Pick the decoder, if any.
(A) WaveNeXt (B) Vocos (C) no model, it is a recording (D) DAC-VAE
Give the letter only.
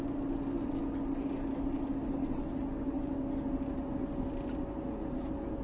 C